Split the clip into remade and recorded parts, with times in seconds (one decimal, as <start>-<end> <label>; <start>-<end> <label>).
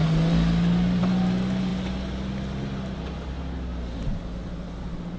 0.0-5.2 recorded